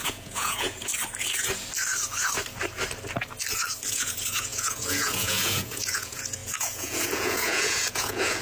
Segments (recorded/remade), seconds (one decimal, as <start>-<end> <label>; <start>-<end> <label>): 0.0-0.9 remade; 0.9-3.9 recorded; 3.9-8.4 remade